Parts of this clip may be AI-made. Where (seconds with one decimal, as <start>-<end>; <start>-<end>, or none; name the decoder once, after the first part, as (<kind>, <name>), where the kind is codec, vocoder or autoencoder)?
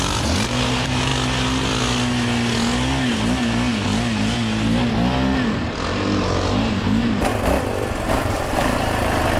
0.0-1.1 (vocoder, BigVGAN v2); 5.6-7.3; 8.1-9.4